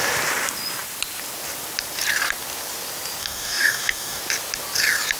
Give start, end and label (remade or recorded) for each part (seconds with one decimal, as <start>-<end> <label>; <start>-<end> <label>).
0.0-3.2 recorded; 3.2-4.2 remade; 4.2-5.2 recorded